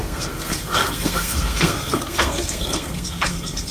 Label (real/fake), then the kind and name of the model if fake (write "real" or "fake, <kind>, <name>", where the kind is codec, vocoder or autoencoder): fake, codec, SNAC